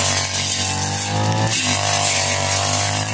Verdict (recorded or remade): recorded